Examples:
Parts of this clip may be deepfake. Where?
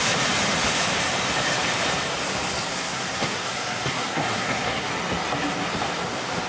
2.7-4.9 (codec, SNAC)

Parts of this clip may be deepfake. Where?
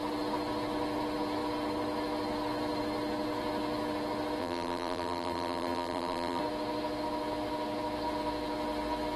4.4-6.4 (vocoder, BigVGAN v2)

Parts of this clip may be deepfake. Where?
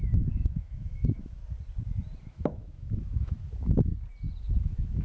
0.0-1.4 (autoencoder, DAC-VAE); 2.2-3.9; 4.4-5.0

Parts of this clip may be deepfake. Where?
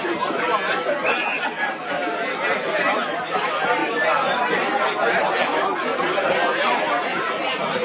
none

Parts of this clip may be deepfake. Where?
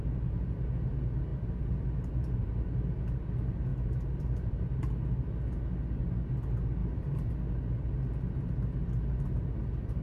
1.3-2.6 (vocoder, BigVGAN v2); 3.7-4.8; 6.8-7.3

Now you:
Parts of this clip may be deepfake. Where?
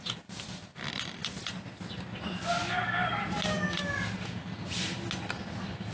none